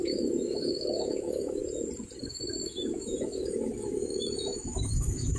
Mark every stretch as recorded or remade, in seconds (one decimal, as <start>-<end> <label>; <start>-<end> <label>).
0.0-1.6 remade; 1.6-2.3 recorded; 2.3-5.4 remade